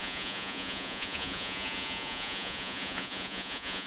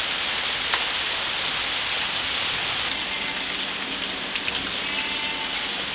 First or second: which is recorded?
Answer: second